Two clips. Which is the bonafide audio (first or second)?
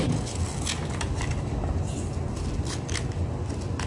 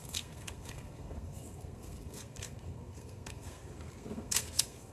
first